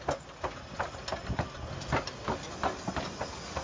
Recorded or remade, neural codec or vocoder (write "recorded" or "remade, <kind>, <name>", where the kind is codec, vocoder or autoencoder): recorded